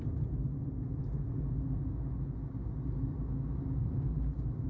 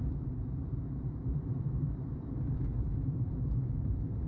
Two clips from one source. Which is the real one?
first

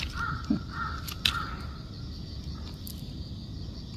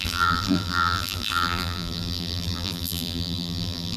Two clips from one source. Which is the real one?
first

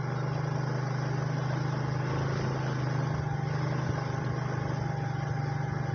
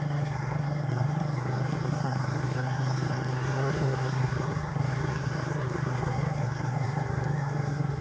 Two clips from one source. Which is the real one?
first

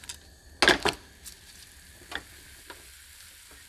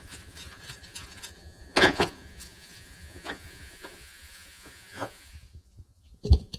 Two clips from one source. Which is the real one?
first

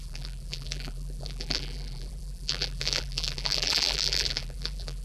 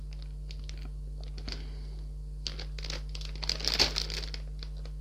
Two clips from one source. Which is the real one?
second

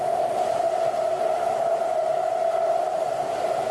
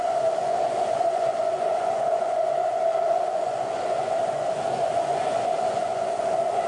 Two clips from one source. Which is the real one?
first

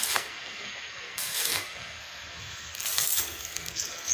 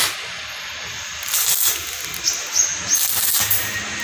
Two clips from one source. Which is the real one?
second